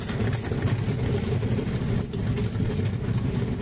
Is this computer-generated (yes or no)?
no